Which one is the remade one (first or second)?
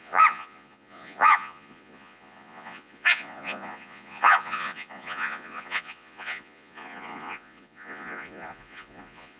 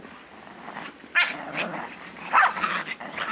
first